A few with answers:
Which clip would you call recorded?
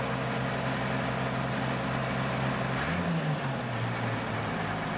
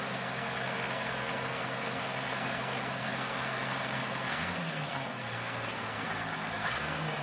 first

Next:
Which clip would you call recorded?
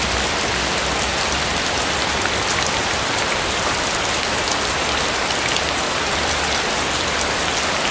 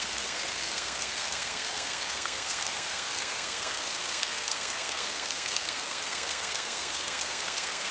first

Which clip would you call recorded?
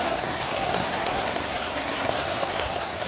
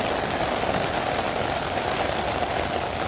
second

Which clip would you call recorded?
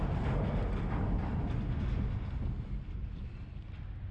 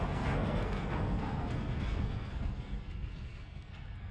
first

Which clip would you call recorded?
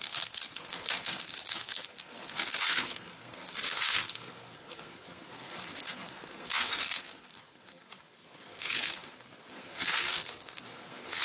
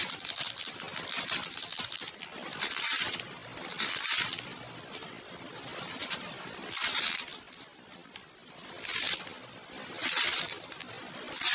second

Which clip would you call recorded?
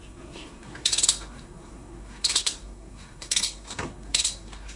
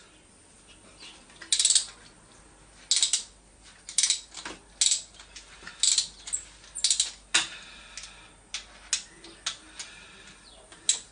second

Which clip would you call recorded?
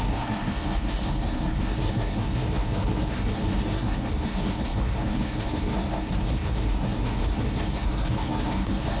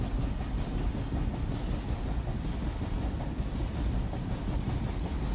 second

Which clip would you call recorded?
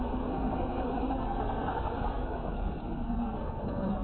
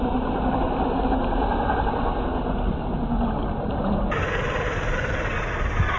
second